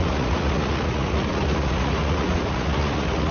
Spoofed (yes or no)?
yes